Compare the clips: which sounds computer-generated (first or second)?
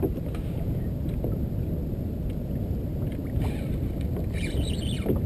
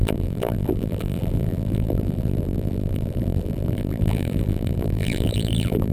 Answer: second